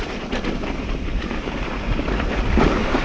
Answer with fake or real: fake